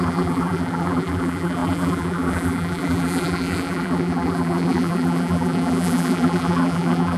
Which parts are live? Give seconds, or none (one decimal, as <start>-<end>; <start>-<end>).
none